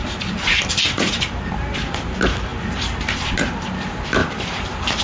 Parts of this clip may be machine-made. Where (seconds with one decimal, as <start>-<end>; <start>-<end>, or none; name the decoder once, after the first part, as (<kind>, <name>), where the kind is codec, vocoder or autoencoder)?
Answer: 0.0-1.5 (vocoder, BigVGAN v2); 4.2-5.0